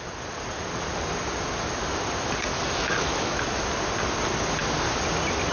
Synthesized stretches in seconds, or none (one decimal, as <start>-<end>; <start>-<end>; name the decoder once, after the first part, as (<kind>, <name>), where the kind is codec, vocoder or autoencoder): 2.5-3.6 (autoencoder, DAC-VAE)